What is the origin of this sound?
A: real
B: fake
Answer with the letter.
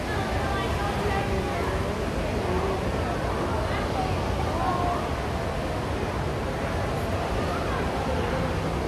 A